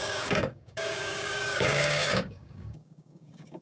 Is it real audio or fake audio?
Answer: fake